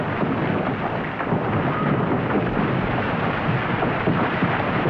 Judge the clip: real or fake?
fake